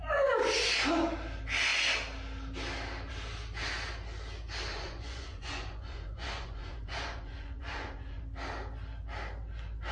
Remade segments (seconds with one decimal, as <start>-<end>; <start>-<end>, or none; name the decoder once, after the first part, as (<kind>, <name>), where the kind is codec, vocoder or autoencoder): 4.7-8.2 (vocoder, Vocos)